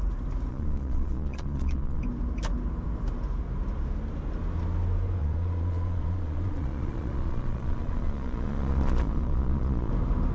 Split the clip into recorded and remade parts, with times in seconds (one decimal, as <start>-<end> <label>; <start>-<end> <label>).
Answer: 0.0-0.5 recorded; 0.5-2.0 remade; 2.0-5.2 recorded; 5.2-9.9 remade; 9.9-10.3 recorded